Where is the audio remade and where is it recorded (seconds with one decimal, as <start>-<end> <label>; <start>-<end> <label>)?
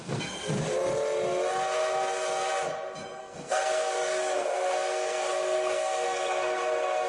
0.0-0.5 remade; 0.5-3.2 recorded; 3.2-7.1 remade